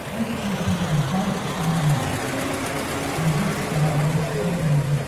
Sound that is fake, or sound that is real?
real